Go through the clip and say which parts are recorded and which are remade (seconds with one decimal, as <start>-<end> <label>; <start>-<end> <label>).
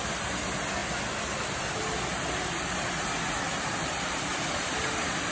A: 0.0-5.3 recorded